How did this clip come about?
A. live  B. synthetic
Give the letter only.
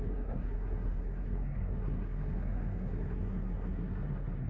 B